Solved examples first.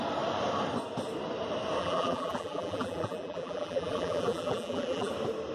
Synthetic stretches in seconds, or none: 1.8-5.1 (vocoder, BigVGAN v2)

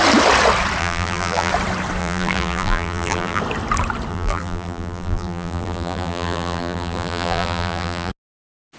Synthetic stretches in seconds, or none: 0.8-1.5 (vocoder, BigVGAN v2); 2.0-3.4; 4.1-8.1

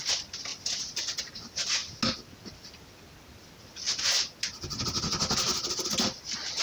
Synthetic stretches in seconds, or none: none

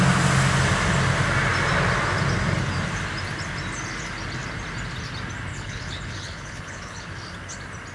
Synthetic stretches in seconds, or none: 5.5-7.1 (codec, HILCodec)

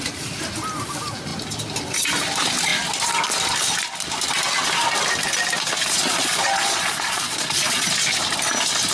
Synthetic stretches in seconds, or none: 6.0-7.9 (vocoder, Vocos)